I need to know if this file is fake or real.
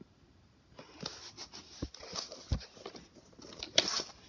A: real